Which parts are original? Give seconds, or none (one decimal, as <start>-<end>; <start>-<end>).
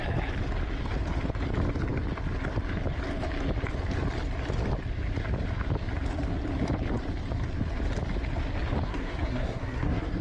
0.0-8.9